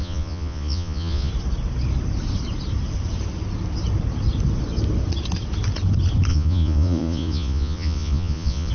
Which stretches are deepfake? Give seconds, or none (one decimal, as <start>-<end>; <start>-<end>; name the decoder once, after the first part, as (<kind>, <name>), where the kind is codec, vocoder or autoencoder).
0.0-1.3 (vocoder, Vocos); 6.3-8.7